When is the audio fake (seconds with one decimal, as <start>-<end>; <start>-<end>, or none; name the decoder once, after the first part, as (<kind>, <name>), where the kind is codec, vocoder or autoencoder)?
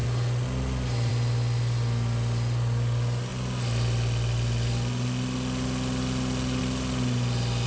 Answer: none